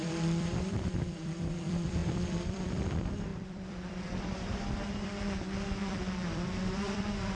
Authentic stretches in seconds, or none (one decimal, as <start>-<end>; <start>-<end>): 5.1-5.9